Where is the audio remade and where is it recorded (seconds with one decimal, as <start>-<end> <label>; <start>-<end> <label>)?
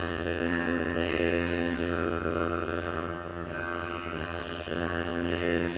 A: 0.0-5.8 remade